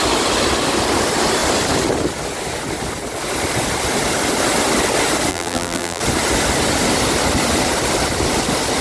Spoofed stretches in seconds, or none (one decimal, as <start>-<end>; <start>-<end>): 5.3-6.0